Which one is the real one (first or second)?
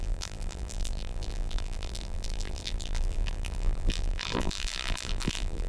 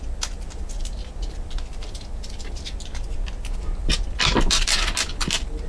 second